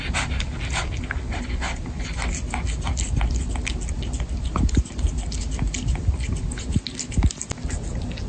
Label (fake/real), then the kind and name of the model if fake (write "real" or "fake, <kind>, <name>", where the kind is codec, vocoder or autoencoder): real